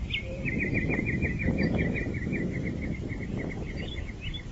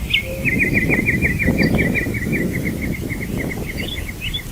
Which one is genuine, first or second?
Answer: second